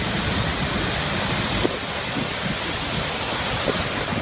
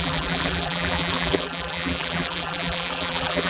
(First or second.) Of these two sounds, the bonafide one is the first